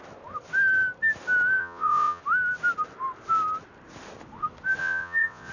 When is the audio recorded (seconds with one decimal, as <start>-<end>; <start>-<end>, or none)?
0.0-1.6; 2.2-4.8

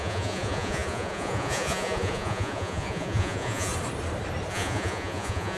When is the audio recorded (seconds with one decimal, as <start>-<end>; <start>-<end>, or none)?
3.7-4.5

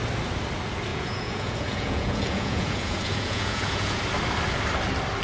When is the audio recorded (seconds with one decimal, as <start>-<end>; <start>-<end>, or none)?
0.0-0.9; 4.0-5.2

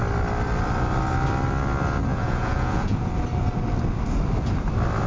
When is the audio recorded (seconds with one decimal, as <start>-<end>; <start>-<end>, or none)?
0.0-2.1; 3.1-5.1

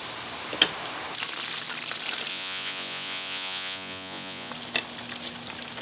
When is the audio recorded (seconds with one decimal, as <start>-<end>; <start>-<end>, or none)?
0.0-2.3; 4.5-5.8

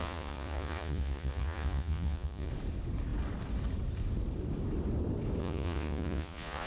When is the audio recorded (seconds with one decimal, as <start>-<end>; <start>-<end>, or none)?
2.5-5.4